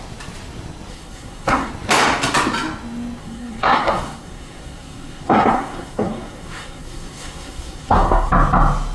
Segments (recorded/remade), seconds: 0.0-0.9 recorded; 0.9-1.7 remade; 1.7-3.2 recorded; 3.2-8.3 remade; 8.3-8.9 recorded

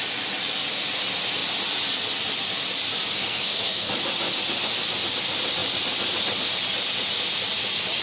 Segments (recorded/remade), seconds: 0.0-3.2 recorded; 3.2-3.9 remade; 3.9-8.0 recorded

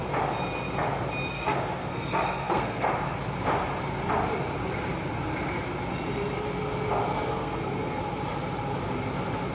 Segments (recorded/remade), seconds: 0.0-1.3 recorded; 1.3-2.9 remade; 2.9-7.3 recorded; 7.3-8.0 remade; 8.0-9.5 recorded

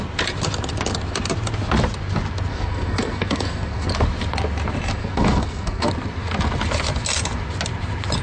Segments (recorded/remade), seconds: 0.0-2.5 recorded; 2.5-3.9 remade; 3.9-5.0 recorded; 5.0-5.9 remade; 5.9-8.2 recorded

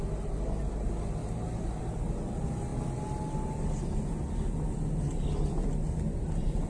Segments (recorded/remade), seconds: 0.0-6.7 recorded

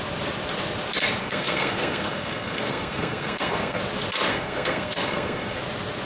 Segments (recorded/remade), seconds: 0.0-1.2 recorded; 1.2-3.8 remade; 3.8-4.3 recorded; 4.3-5.6 remade; 5.6-6.0 recorded

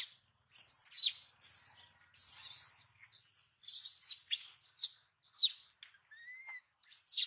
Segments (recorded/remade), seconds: 0.0-7.3 recorded

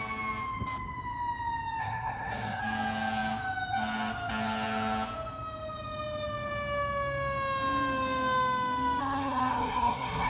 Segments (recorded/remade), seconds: 0.0-1.8 recorded; 1.8-2.6 remade; 2.6-9.0 recorded; 9.0-10.3 remade